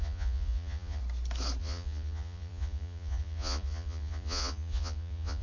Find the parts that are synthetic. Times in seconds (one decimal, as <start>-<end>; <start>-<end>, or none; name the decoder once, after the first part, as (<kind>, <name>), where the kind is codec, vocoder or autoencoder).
0.0-1.0 (vocoder, Vocos); 1.6-5.4